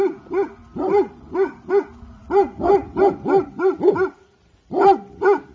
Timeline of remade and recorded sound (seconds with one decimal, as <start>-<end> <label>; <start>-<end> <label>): 0.0-0.6 recorded; 0.6-1.7 remade; 1.7-5.5 recorded